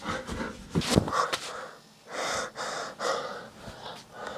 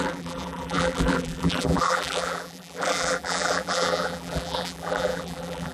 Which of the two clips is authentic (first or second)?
first